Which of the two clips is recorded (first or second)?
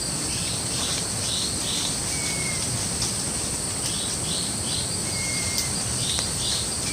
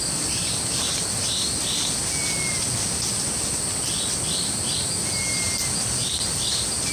second